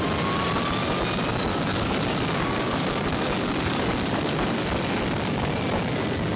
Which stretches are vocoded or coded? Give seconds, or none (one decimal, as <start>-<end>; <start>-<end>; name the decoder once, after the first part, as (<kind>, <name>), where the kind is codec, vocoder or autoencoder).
1.5-5.3 (codec, DAC)